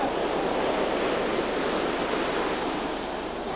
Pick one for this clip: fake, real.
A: real